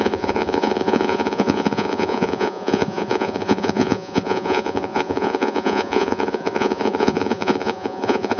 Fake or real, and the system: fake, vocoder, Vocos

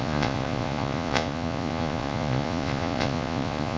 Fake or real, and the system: fake, vocoder, Vocos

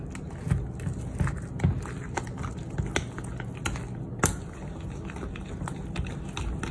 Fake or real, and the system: real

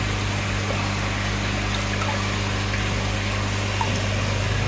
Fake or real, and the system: real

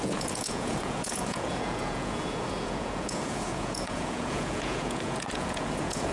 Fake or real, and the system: fake, vocoder, Vocos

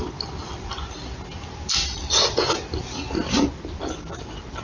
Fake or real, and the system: real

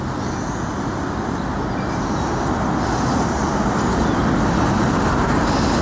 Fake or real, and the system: real